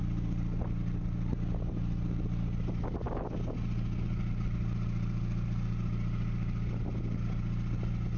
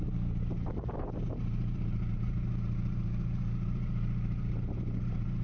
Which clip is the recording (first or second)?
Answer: first